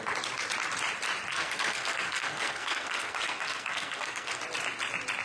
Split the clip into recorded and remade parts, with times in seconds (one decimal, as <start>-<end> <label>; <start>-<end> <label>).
0.0-1.3 recorded; 1.3-4.4 remade; 4.4-5.2 recorded